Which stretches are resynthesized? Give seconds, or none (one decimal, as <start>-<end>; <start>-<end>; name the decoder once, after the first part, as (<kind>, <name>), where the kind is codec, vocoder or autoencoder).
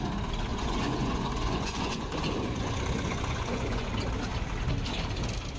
0.5-3.9 (vocoder, Vocos)